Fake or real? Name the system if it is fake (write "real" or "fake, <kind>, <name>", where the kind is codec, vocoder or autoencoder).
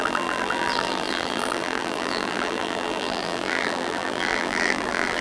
fake, vocoder, BigVGAN v2